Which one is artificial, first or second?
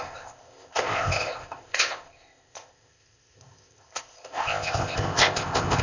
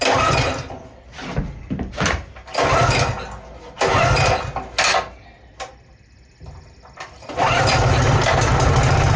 first